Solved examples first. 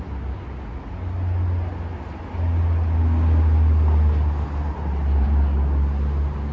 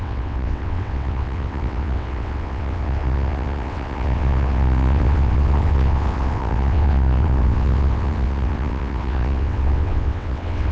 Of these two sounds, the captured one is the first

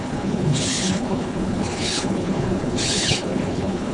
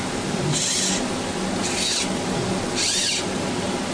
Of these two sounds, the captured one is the second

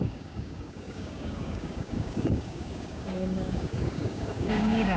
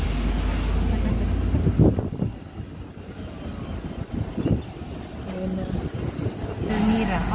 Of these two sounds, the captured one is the second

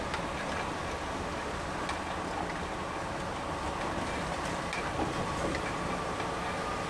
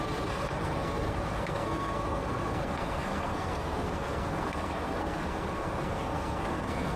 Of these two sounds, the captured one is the first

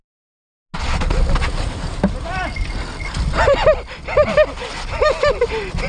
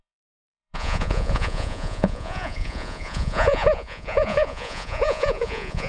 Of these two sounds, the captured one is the first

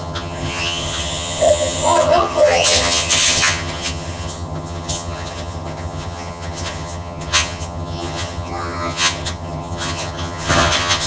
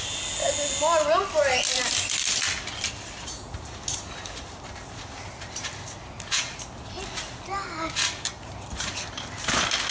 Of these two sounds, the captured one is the second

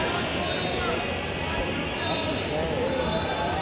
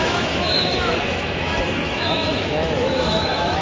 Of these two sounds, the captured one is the first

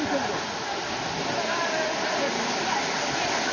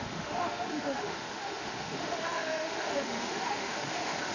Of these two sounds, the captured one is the first